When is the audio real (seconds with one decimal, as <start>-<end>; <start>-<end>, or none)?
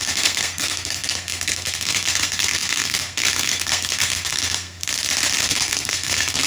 4.8-5.4